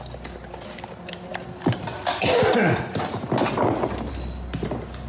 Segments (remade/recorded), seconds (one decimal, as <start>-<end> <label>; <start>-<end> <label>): 0.0-5.1 recorded

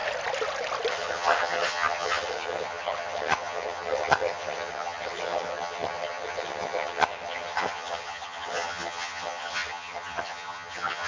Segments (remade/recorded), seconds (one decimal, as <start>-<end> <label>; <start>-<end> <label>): 0.0-0.9 recorded; 0.9-11.1 remade

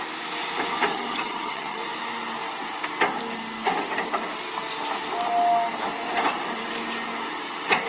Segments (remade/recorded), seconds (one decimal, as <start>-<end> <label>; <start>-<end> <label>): 0.0-0.9 recorded; 0.9-1.8 remade; 1.8-7.9 recorded

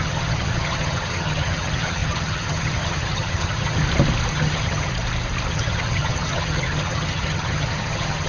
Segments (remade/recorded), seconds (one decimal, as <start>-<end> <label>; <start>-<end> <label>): 0.0-3.8 remade; 3.8-4.3 recorded; 4.3-4.9 remade; 4.9-5.5 recorded; 5.5-8.3 remade

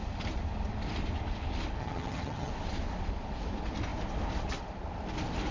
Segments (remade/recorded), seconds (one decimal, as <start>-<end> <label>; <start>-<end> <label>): 0.0-1.8 recorded; 1.8-2.5 remade; 2.5-5.5 recorded

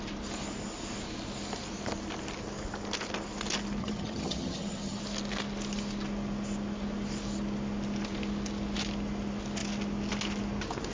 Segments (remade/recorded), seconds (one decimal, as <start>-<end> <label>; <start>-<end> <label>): 0.0-3.8 recorded; 3.8-5.0 remade; 5.0-10.9 recorded